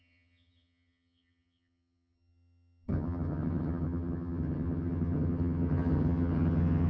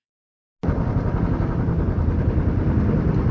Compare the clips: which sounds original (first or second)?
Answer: second